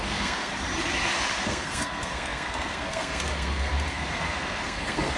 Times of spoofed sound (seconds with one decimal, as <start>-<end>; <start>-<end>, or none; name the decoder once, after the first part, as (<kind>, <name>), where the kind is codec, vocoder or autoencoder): 0.0-0.5 (codec, SNAC); 1.4-5.2

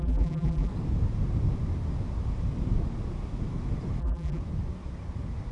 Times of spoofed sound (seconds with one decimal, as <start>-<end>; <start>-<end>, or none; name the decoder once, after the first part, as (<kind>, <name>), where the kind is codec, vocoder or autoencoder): 0.0-0.7 (vocoder, BigVGAN v2); 4.0-4.4

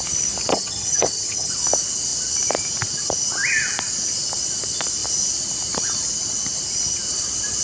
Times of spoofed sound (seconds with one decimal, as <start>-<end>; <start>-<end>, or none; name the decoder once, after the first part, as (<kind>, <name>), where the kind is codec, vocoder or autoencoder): 0.5-1.5 (vocoder, HiFi-GAN)

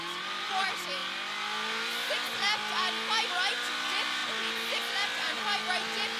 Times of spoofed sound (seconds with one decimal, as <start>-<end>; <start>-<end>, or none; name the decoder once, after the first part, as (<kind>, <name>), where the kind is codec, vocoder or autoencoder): none

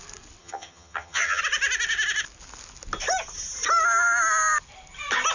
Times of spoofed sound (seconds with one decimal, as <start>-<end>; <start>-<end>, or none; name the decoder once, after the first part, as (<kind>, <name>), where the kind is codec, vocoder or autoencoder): 0.4-1.4 (vocoder, HiFi-GAN)

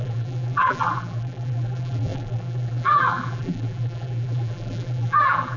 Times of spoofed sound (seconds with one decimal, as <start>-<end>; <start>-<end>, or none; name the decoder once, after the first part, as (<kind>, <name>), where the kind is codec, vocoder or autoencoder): 0.0-5.6 (vocoder, BigVGAN v2)